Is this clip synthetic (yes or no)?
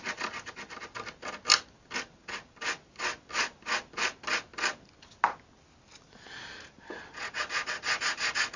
no